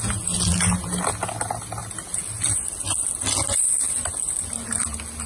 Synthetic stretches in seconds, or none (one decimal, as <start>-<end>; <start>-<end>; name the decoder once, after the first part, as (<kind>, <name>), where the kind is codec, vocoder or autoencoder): none